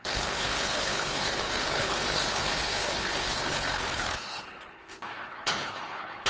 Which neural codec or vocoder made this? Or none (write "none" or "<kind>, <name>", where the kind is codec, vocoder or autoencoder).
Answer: codec, HILCodec